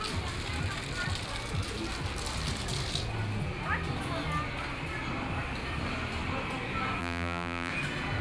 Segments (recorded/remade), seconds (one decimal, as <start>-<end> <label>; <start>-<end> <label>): 0.0-7.0 recorded; 7.0-7.7 remade; 7.7-8.2 recorded